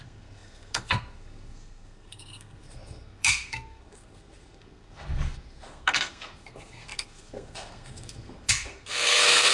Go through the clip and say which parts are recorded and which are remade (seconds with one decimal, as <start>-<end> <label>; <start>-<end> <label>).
0.0-9.5 remade